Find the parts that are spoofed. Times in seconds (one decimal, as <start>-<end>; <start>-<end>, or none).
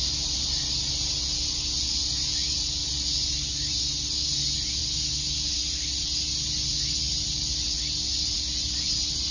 none